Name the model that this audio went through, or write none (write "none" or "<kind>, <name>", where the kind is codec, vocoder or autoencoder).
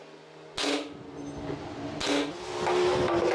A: none